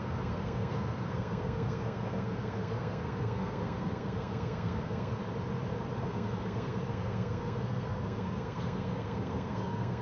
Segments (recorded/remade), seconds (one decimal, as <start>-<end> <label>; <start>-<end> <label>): 0.0-5.2 remade; 5.2-6.0 recorded; 6.0-10.0 remade